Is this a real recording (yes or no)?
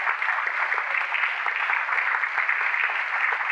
yes